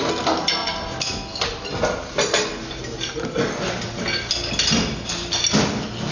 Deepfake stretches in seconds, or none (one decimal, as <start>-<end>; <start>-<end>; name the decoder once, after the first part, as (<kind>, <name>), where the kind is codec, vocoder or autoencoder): none